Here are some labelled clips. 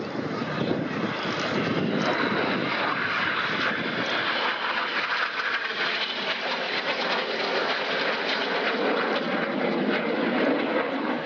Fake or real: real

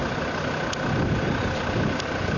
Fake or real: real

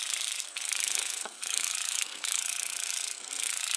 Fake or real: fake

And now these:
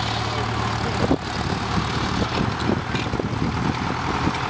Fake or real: real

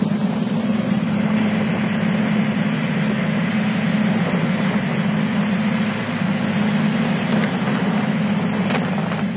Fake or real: real